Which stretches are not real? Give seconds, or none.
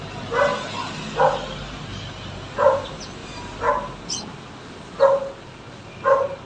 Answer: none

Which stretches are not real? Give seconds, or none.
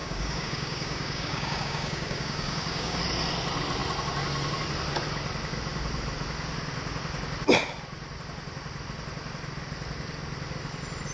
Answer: 0.0-3.0 (codec, DAC)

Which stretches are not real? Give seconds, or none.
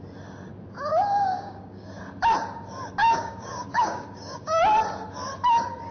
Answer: 0.9-2.0 (codec, DAC); 3.0-4.6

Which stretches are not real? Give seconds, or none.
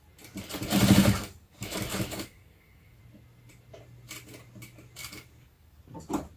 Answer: 1.0-3.0 (codec, DAC); 5.0-5.8